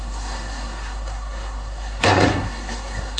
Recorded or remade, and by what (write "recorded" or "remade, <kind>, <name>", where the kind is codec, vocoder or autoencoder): remade, codec, SNAC